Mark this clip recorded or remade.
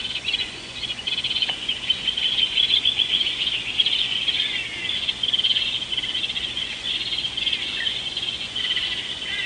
remade